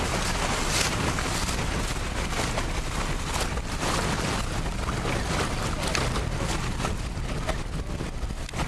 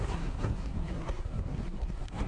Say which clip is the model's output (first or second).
second